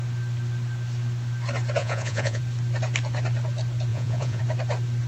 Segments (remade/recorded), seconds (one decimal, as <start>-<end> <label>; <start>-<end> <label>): 0.0-1.8 recorded; 1.8-2.4 remade; 2.4-3.9 recorded; 3.9-4.4 remade; 4.4-5.1 recorded